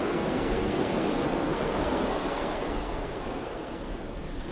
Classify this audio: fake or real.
fake